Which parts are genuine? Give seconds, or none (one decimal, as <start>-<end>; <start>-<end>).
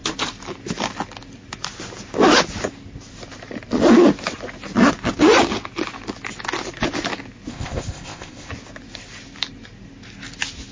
0.0-7.5; 8.5-10.7